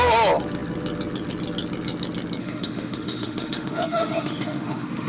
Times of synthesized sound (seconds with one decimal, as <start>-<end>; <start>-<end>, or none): 2.4-5.1